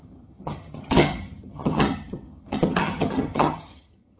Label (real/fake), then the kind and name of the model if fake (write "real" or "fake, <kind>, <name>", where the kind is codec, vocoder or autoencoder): fake, vocoder, HiFi-GAN